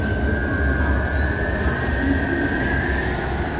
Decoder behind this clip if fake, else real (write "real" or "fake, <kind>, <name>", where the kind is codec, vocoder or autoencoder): real